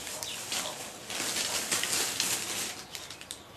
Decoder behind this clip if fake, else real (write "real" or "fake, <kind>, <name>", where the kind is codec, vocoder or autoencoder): real